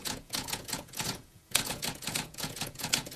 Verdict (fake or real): fake